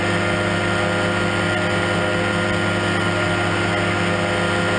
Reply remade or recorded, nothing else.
recorded